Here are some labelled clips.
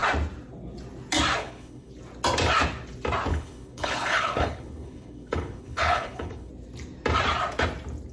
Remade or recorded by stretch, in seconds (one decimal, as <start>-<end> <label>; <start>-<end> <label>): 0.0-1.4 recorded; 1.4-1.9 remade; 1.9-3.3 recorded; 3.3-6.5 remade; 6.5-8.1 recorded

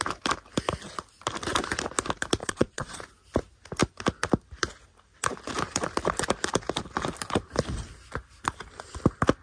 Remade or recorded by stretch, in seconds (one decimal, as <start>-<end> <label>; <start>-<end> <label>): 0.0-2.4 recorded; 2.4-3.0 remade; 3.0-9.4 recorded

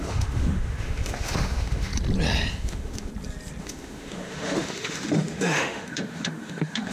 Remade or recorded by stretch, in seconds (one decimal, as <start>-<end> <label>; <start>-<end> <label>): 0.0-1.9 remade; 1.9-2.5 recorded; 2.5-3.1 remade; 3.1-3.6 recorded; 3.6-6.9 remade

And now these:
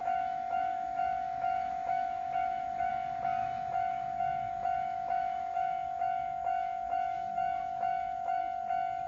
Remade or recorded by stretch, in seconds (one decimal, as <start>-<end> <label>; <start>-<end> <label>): 0.0-2.9 remade; 2.9-3.4 recorded; 3.4-8.4 remade; 8.4-9.1 recorded

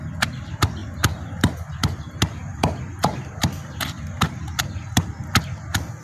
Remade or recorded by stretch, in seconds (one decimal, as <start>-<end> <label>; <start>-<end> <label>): 0.0-0.8 recorded; 0.8-2.1 remade; 2.1-2.5 recorded; 2.5-4.6 remade; 4.6-6.0 recorded

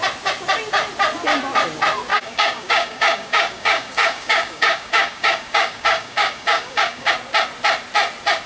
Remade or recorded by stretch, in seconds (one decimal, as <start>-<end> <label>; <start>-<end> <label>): 0.0-2.1 recorded; 2.1-7.1 remade; 7.1-8.5 recorded

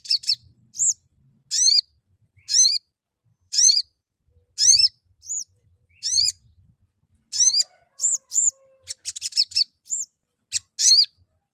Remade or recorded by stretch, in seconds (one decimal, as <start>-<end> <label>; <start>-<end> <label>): 0.0-3.3 recorded; 3.3-4.2 remade; 4.2-11.5 recorded